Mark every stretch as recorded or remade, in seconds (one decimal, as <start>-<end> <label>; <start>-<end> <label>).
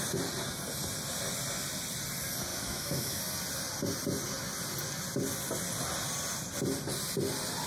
0.0-2.5 recorded; 2.5-3.2 remade; 3.2-7.7 recorded